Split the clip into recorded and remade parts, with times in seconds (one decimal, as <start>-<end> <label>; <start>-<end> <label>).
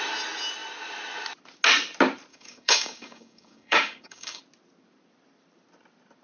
0.0-2.3 recorded; 2.3-4.4 remade; 4.4-6.2 recorded